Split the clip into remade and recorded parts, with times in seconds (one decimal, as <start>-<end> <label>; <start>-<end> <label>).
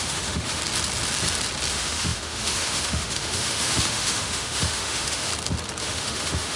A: 0.0-0.6 remade; 0.6-1.7 recorded; 1.7-5.3 remade; 5.3-5.8 recorded; 5.8-6.6 remade